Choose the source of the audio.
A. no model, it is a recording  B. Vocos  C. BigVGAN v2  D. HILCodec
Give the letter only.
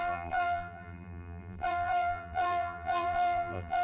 C